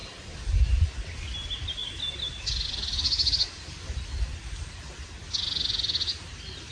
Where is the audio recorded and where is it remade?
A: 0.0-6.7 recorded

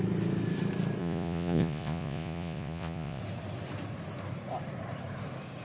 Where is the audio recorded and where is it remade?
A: 0.0-1.0 recorded; 1.0-3.2 remade; 3.2-5.6 recorded

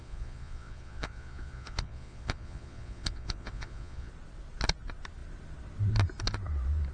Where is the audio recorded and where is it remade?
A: 0.0-4.1 remade; 4.1-6.9 recorded

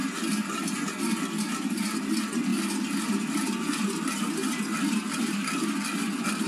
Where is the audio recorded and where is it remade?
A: 0.0-6.5 recorded